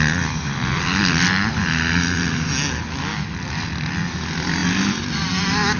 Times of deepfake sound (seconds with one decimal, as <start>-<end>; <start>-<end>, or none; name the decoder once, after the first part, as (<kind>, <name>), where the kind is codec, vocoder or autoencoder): none

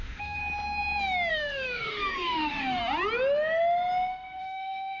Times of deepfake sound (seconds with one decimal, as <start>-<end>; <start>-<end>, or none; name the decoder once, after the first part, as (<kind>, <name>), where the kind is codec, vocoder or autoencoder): 0.0-0.4 (autoencoder, DAC-VAE); 1.3-2.8; 4.4-5.0

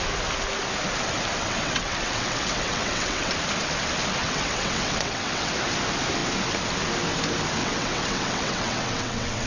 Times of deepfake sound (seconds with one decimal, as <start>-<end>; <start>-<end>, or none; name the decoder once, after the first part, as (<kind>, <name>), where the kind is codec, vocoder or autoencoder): 1.4-3.3 (vocoder, WaveNeXt); 4.2-5.5; 7.6-9.5

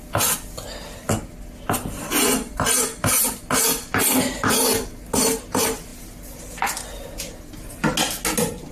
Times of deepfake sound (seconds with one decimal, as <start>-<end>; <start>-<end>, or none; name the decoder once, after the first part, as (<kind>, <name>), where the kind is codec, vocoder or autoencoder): none